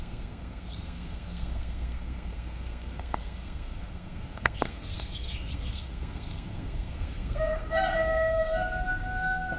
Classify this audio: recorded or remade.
remade